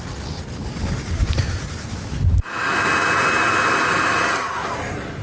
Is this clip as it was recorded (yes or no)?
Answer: yes